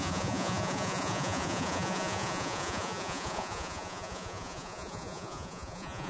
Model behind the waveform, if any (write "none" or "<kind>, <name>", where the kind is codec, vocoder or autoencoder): vocoder, Vocos